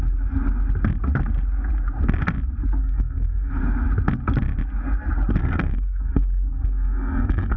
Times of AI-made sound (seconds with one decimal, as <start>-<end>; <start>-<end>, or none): 2.8-3.5; 5.4-7.6

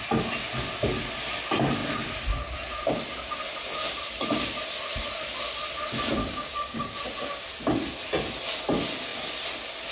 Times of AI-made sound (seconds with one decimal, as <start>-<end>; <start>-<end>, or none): 6.2-7.0

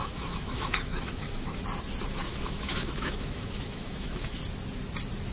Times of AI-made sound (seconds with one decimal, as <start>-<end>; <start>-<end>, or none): 0.0-1.6; 2.2-4.4

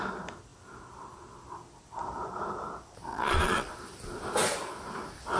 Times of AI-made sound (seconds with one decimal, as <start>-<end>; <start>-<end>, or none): 3.1-3.7

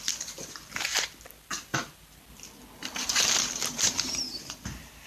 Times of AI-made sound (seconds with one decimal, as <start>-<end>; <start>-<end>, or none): 1.7-2.2; 2.8-5.1

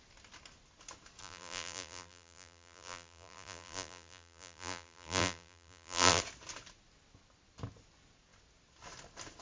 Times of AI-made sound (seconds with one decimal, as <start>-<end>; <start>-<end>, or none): 1.2-6.2

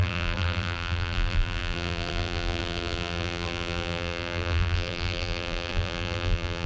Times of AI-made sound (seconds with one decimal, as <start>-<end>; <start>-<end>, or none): 0.0-6.7

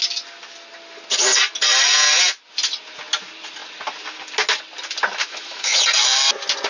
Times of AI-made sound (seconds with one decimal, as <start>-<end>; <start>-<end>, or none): 5.2-5.8